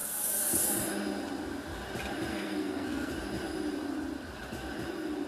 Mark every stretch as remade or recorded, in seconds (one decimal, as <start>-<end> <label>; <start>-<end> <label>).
0.0-0.7 remade; 0.7-2.3 recorded; 2.3-3.1 remade; 3.1-5.3 recorded